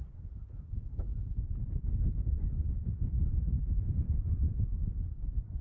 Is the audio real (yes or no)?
no